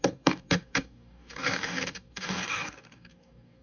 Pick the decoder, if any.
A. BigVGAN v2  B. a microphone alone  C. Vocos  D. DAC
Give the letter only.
D